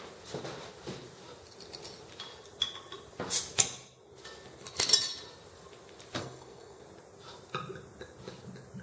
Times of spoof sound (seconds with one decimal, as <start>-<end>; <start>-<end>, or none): 6.2-6.8